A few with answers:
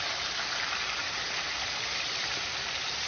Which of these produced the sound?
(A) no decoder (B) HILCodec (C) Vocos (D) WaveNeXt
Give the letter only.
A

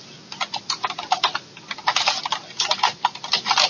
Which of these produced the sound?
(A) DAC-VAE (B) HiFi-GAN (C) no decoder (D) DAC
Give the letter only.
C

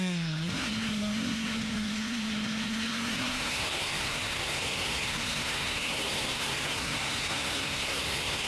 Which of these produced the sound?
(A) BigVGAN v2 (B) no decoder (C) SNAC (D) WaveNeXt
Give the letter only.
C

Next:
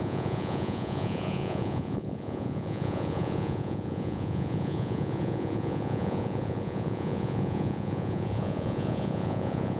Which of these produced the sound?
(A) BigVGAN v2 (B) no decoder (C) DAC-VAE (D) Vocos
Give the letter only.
D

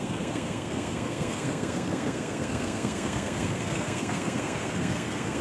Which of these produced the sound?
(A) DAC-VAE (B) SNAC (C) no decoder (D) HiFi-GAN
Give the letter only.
B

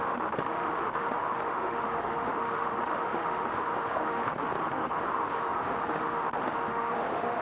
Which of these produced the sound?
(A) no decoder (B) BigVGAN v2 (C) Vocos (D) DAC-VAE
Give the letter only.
D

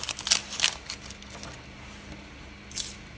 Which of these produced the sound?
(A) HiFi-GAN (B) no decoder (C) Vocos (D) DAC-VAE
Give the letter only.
B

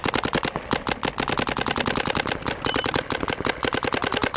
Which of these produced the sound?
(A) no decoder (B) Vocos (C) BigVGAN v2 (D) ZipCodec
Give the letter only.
A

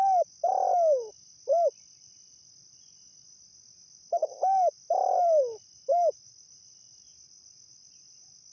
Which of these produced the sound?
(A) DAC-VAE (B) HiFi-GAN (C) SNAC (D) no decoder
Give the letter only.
D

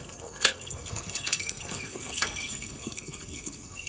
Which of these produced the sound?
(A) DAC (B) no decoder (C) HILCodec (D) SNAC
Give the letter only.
D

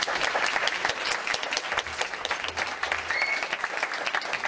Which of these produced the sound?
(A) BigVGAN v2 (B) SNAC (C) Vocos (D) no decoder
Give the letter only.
D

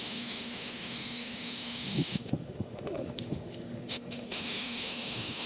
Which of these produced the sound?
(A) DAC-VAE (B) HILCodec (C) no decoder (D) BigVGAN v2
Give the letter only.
A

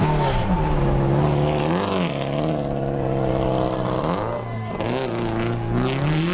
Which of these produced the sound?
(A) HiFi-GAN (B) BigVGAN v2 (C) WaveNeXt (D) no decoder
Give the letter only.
D